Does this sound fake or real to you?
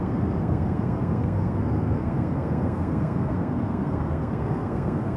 fake